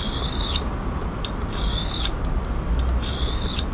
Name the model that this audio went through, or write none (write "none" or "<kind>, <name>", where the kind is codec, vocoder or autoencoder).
none